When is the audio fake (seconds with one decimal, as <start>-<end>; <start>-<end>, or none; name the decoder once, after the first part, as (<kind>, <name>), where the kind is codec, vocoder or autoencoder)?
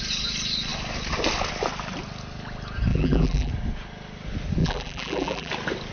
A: 2.9-3.5 (vocoder, BigVGAN v2); 4.6-5.5